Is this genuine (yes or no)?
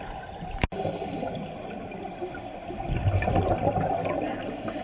yes